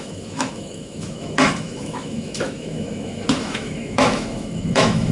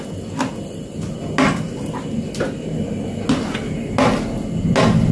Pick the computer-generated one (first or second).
first